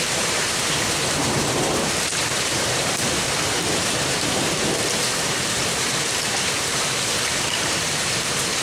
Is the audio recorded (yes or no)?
no